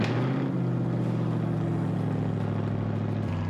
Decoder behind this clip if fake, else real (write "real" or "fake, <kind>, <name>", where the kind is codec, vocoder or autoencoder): real